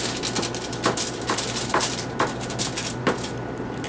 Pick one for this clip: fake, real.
real